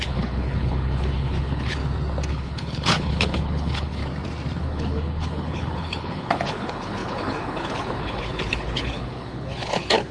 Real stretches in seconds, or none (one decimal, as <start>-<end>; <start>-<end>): 1.8-2.3; 4.0-4.6